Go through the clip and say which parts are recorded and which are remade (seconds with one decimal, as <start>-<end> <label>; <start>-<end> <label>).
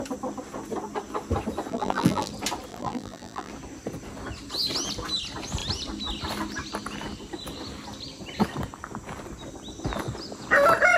0.0-1.7 recorded; 1.7-2.3 remade; 2.3-2.7 recorded; 2.7-3.5 remade; 3.5-11.0 recorded